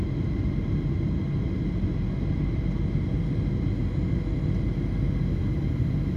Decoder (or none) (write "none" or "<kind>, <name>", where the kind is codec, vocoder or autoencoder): none